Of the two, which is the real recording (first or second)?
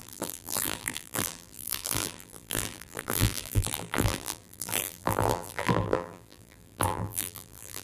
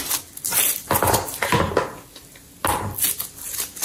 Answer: second